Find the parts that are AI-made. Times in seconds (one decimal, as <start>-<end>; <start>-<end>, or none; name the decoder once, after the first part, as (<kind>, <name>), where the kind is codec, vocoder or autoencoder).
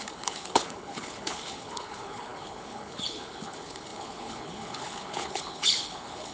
0.0-6.3 (codec, HILCodec)